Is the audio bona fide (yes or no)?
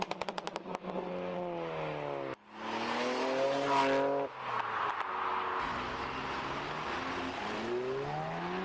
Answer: yes